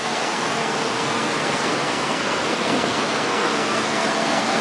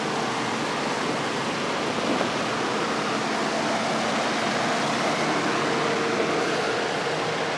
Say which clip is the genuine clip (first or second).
second